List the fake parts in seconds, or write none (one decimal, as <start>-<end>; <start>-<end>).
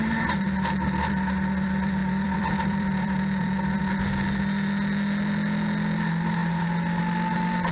2.0-3.8